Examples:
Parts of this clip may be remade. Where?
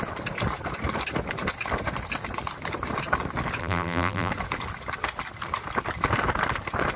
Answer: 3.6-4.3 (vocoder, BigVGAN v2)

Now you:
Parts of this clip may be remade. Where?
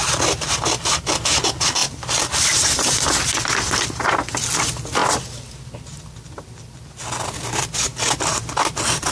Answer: 1.8-2.9 (vocoder, BigVGAN v2)